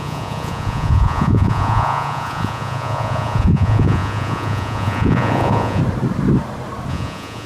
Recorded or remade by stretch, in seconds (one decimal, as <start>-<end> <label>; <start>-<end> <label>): 0.0-5.8 remade; 5.8-6.9 recorded; 6.9-7.5 remade